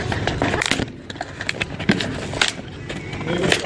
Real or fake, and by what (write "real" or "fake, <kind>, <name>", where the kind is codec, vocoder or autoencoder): real